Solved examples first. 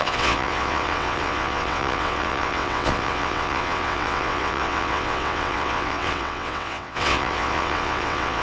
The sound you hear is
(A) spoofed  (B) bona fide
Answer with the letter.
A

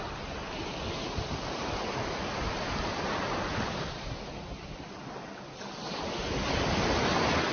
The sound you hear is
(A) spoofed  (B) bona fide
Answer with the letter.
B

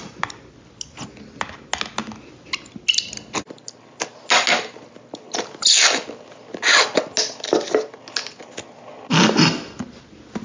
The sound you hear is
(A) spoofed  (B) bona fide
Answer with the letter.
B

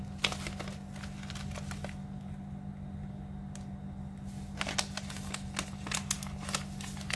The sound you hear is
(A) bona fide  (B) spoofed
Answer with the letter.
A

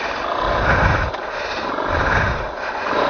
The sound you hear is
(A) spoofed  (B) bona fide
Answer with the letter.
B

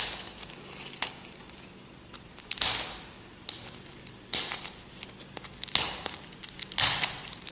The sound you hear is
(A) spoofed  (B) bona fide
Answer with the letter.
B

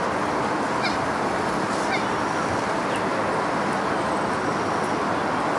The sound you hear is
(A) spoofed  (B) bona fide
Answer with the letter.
B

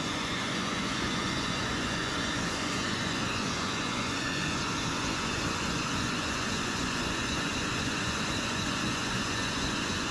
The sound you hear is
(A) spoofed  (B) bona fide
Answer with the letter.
A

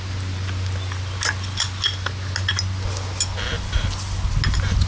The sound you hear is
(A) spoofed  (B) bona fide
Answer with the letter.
B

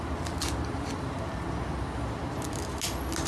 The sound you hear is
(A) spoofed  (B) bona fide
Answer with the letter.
B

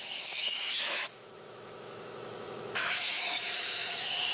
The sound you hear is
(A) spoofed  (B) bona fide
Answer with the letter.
A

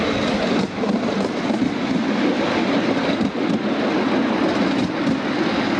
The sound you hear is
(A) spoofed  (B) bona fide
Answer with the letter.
B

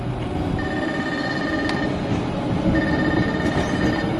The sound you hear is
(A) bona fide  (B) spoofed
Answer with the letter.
A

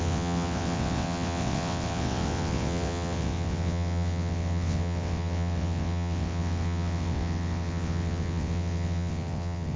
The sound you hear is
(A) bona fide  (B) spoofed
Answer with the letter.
B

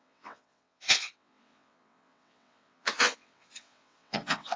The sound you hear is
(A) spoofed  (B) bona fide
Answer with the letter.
A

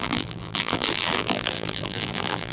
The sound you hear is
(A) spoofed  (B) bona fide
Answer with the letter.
A